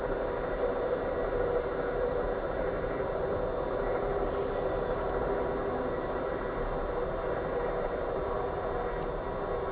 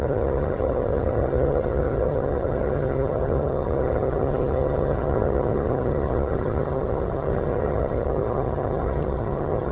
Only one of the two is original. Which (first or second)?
first